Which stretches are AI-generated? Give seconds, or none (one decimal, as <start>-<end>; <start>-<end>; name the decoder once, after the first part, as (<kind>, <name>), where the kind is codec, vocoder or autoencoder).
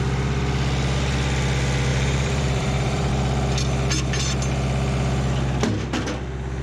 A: 1.9-3.1 (vocoder, BigVGAN v2)